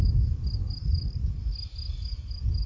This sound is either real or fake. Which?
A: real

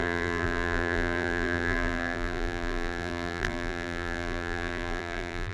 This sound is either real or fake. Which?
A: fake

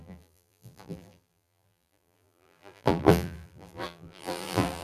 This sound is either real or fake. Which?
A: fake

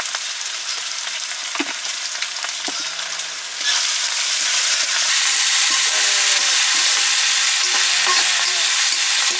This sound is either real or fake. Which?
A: fake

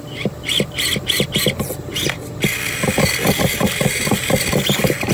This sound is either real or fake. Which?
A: real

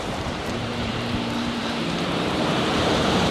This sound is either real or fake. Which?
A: fake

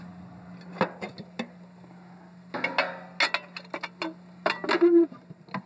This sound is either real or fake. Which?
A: real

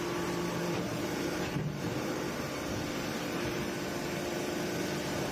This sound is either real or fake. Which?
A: fake